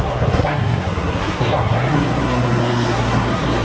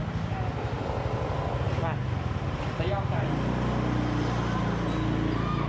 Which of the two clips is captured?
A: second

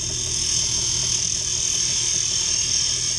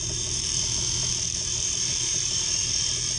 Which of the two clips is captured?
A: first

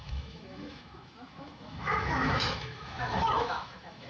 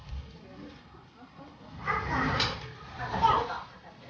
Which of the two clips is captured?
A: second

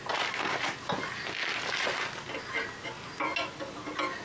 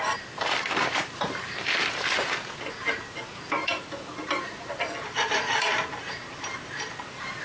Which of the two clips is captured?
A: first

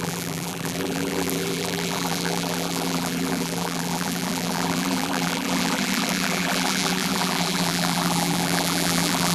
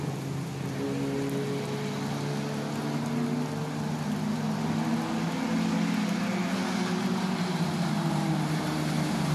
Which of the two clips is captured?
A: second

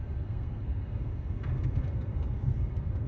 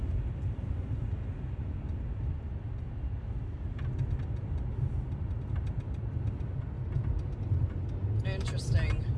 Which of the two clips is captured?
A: second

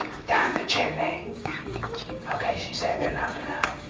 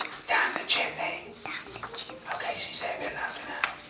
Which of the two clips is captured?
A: second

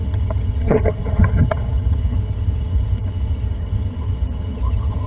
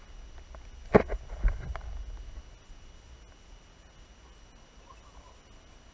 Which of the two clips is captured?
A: second